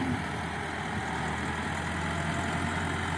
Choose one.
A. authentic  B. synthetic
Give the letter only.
A